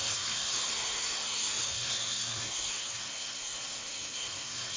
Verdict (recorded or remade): remade